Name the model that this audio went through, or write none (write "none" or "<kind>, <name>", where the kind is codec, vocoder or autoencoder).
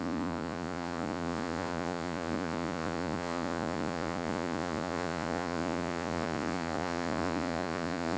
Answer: vocoder, Vocos